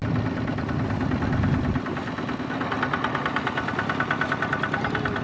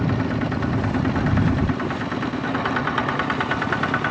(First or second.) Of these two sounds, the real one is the first